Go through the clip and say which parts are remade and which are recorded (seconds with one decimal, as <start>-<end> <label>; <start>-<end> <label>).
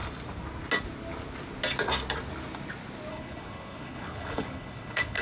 0.0-3.1 recorded; 3.1-5.2 remade